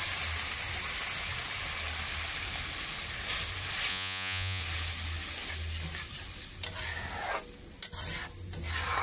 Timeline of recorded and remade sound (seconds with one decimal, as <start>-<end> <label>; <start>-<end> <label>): 0.0-3.9 recorded; 3.9-4.6 remade; 4.6-9.0 recorded